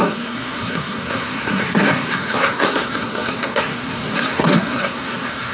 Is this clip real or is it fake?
fake